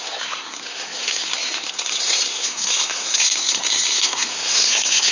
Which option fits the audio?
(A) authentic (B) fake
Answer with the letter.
B